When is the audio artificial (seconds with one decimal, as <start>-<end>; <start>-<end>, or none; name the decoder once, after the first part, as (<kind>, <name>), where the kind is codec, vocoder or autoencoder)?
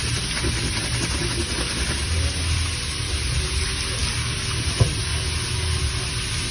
none